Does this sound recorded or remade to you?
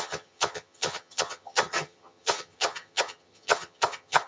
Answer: remade